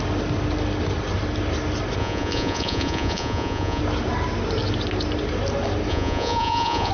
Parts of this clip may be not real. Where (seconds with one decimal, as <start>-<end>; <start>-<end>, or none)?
2.0-3.8; 5.9-6.9